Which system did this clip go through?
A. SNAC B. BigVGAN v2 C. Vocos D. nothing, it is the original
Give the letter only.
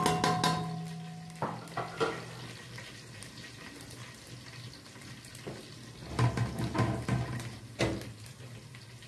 D